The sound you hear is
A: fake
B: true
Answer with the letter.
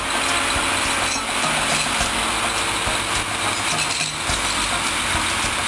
B